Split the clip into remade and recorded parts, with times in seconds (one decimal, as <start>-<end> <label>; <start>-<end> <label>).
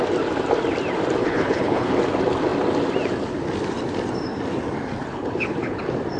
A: 0.0-1.2 recorded; 1.2-1.9 remade; 1.9-5.1 recorded; 5.1-5.8 remade; 5.8-6.2 recorded